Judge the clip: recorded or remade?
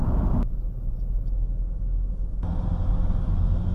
recorded